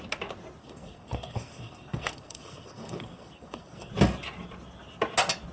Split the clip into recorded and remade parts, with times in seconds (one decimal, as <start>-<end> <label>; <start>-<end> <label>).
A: 0.0-0.6 recorded; 0.6-3.9 remade; 3.9-5.5 recorded